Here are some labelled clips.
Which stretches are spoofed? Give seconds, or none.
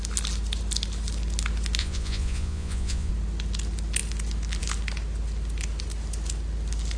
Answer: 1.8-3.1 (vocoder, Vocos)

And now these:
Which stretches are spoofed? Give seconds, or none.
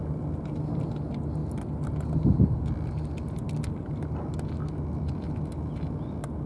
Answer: none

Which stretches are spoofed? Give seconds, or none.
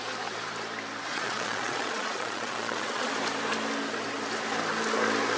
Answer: 1.1-3.1 (vocoder, Vocos)